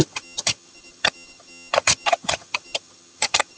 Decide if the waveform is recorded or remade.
remade